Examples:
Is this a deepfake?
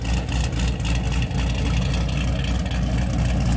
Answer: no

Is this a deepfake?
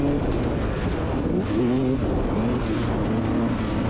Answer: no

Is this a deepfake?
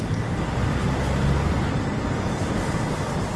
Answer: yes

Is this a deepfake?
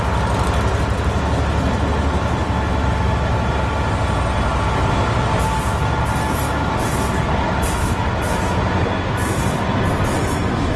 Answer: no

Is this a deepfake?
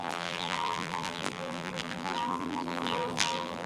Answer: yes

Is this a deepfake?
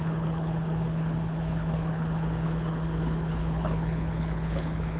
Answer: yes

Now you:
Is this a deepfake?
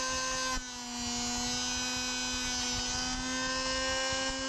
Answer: no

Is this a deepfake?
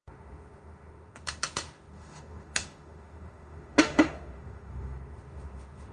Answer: yes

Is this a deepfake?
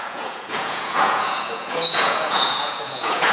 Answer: yes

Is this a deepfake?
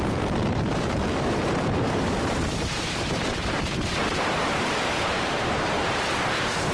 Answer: yes